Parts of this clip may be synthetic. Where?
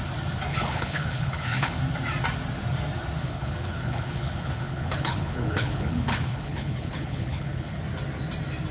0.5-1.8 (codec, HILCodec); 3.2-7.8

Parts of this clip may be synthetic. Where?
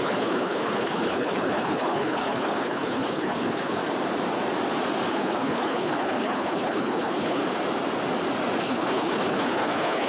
0.0-3.8 (codec, HILCodec); 5.1-7.4; 8.6-10.1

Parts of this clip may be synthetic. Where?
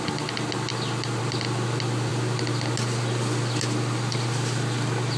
none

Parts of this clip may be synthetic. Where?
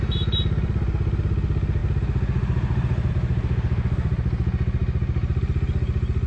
none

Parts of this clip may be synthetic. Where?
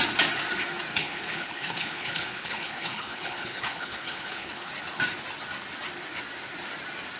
0.9-4.7 (codec, HILCodec)